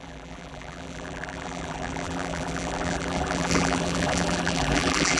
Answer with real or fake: fake